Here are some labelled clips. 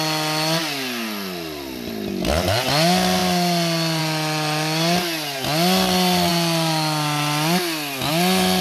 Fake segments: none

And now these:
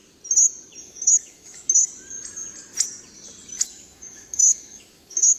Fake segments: 0.8-1.9 (autoencoder, DAC-VAE); 3.6-5.4

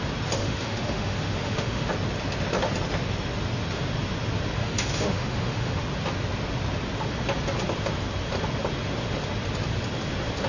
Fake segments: 0.4-1.9 (autoencoder, DAC-VAE); 4.6-5.8

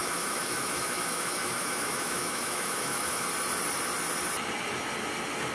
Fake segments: 0.0-3.3 (autoencoder, DAC-VAE)